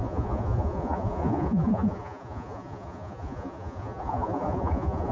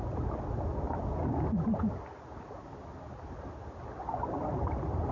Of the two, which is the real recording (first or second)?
second